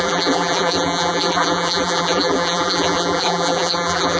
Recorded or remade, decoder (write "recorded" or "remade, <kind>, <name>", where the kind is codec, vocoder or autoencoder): remade, vocoder, BigVGAN v2